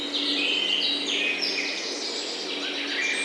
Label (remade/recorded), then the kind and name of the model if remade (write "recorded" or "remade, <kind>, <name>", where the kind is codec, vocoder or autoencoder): recorded